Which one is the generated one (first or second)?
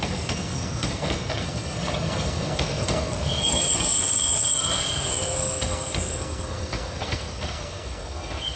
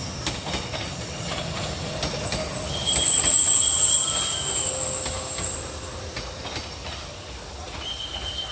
first